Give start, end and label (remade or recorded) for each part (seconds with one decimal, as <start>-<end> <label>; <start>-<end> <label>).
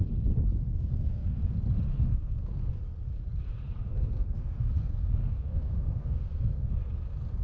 0.0-0.7 recorded; 0.7-1.4 remade; 1.4-1.9 recorded; 1.9-2.7 remade; 2.7-3.9 recorded; 3.9-6.7 remade; 6.7-7.4 recorded